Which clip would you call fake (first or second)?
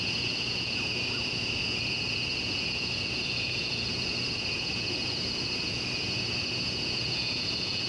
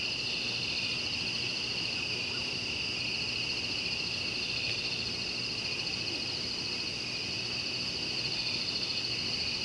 first